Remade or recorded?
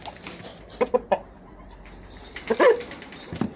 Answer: remade